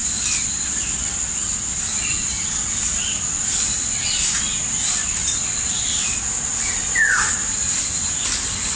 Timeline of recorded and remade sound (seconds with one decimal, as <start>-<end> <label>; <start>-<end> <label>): 0.0-8.8 recorded